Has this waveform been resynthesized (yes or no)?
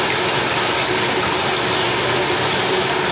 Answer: no